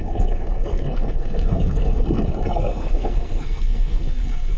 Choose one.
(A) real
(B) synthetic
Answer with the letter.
B